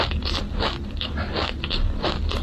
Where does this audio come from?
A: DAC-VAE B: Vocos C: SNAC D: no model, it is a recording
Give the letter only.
D